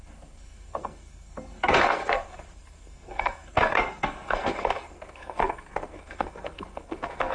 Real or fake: fake